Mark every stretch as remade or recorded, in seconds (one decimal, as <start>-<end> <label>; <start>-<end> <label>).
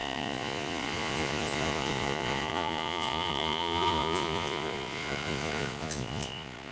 0.0-6.7 remade